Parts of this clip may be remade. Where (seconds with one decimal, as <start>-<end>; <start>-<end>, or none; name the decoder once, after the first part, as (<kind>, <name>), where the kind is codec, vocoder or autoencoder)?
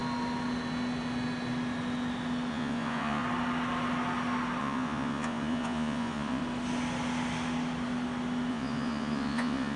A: 2.5-3.2 (vocoder, Vocos); 4.6-6.4; 8.5-9.8